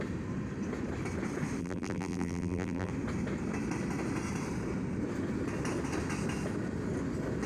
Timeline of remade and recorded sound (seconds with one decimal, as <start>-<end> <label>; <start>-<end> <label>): 0.0-1.6 recorded; 1.6-2.9 remade; 2.9-7.5 recorded